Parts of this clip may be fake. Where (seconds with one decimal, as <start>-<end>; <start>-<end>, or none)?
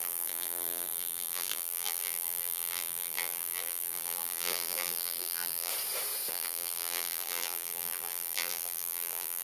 0.0-5.7; 6.3-9.4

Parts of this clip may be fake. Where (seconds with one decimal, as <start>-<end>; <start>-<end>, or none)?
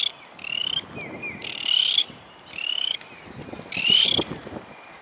2.0-3.1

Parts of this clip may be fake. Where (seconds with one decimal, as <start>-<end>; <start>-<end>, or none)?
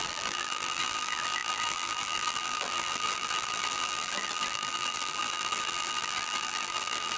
0.0-7.2